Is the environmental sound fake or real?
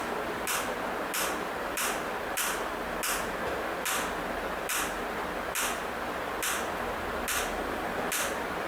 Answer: real